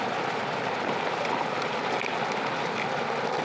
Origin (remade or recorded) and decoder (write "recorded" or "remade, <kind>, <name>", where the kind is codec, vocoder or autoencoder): recorded